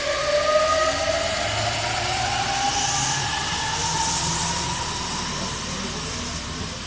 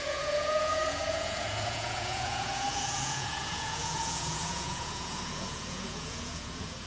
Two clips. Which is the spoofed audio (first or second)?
second